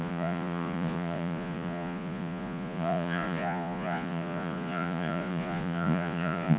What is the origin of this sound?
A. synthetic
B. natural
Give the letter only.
A